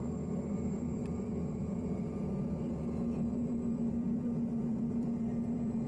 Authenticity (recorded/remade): remade